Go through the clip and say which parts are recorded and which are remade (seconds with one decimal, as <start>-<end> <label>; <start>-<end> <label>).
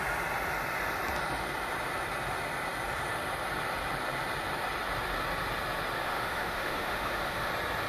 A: 0.0-6.0 recorded; 6.0-7.5 remade; 7.5-7.9 recorded